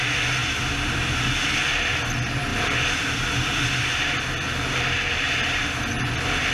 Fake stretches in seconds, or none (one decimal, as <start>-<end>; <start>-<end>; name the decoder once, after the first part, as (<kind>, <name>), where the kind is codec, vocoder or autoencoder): none